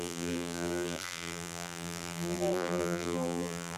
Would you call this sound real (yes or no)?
no